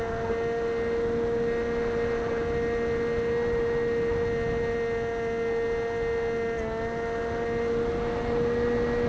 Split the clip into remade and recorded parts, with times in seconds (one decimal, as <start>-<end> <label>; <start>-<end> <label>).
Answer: 0.0-9.1 recorded